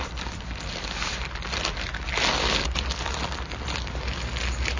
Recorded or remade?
recorded